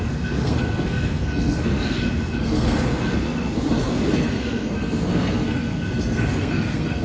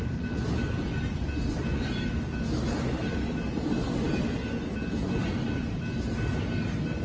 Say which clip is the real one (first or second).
second